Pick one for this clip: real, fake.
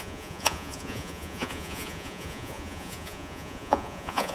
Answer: fake